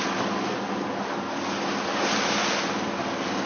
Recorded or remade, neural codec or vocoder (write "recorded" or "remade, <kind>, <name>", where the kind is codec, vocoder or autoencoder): recorded